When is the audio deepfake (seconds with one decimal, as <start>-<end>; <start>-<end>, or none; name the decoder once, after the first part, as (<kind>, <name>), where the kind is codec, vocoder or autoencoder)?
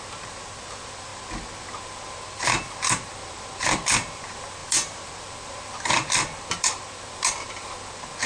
0.0-1.1 (vocoder, BigVGAN v2); 1.8-8.3